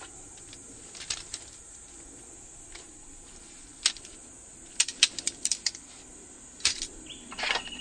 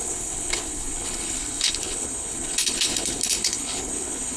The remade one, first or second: second